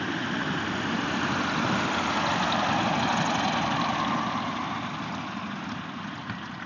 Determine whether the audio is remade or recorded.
recorded